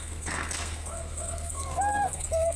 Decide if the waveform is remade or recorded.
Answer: remade